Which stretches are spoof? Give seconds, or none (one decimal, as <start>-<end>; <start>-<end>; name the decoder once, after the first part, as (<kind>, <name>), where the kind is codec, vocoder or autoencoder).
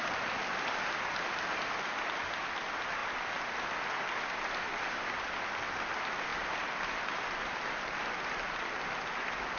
none